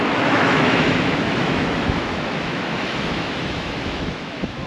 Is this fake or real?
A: fake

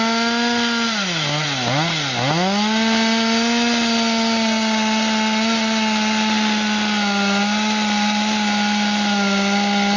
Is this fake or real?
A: real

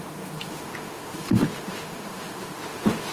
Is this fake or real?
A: fake